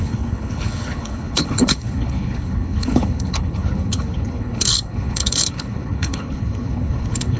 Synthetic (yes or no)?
yes